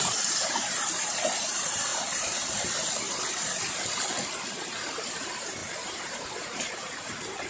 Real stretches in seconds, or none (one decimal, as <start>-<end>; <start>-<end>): 1.9-5.1